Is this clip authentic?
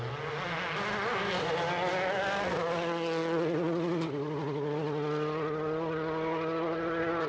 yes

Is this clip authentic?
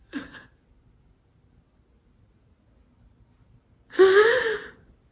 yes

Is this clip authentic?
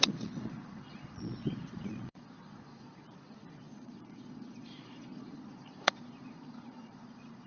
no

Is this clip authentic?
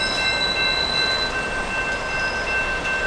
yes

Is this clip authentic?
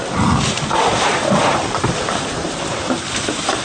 yes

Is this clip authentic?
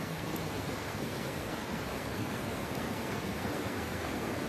no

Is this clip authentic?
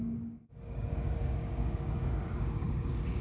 no